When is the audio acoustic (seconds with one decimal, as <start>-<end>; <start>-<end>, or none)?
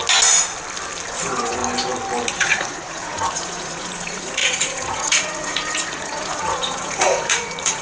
0.0-1.1; 1.6-2.3